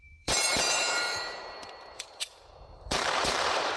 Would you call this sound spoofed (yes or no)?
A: yes